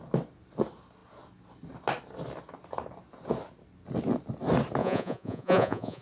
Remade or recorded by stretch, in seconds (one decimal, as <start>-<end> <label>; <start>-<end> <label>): 0.0-4.8 recorded; 4.8-6.0 remade